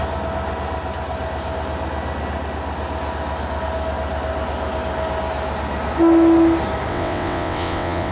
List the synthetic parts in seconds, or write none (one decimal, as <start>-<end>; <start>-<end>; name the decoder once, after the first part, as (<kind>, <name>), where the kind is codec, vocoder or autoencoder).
6.9-8.1 (vocoder, WaveNeXt)